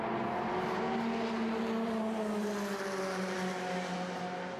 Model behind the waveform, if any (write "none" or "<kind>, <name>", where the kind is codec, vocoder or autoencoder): none